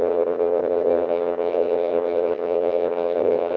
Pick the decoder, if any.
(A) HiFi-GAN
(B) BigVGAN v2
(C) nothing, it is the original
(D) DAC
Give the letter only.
A